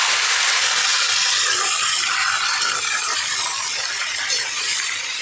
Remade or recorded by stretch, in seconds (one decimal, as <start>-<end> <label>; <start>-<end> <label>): 0.0-5.2 recorded